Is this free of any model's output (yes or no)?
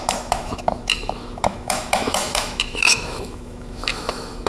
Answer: no